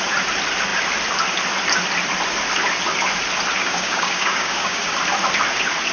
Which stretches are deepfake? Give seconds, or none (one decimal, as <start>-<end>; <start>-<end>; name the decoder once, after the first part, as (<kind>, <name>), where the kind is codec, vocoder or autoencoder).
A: 3.6-4.9 (codec, DAC)